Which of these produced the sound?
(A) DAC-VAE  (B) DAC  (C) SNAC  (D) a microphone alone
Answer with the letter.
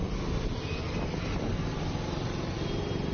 D